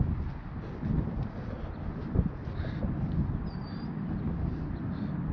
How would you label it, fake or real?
real